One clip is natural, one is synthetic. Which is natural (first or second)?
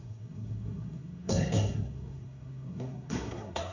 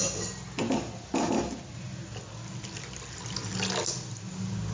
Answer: second